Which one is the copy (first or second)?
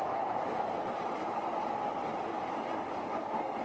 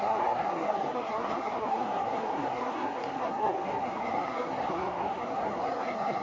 second